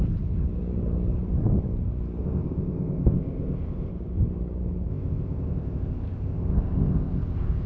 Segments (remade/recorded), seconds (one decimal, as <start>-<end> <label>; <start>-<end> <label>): 0.0-2.2 recorded; 2.2-3.9 remade; 3.9-4.9 recorded; 4.9-7.7 remade